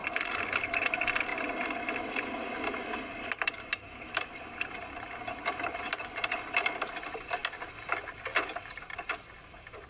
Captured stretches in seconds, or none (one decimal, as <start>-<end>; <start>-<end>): 0.0-9.9